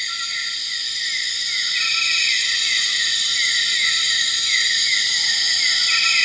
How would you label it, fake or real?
real